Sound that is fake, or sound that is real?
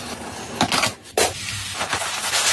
real